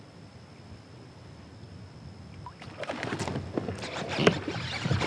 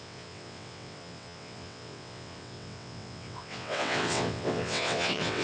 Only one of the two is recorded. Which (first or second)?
first